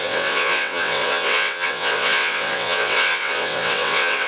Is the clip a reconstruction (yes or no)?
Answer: yes